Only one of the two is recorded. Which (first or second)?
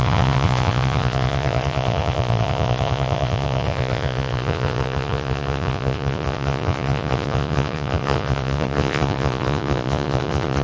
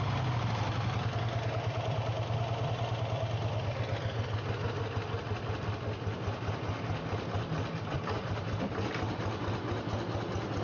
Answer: second